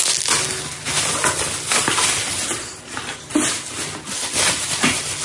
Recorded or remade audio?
recorded